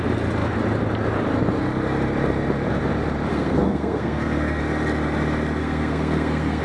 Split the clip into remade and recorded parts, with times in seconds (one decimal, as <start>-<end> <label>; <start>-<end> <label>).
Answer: 0.0-3.3 recorded; 3.3-4.6 remade; 4.6-5.6 recorded; 5.6-6.6 remade